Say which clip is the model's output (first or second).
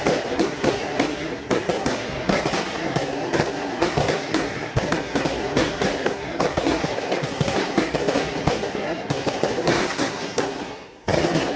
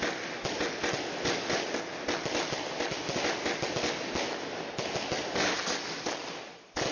first